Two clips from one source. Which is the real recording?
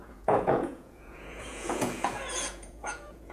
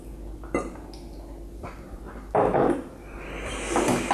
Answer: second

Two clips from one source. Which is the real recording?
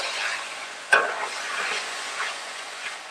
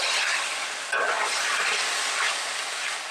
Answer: second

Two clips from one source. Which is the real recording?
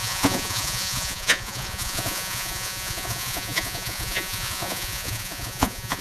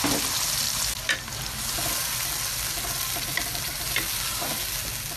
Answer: second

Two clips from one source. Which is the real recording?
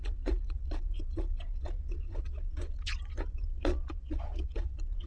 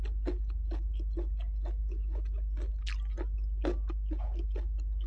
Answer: second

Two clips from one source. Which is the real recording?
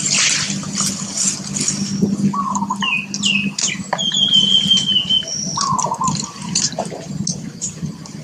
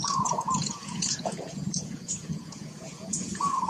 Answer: first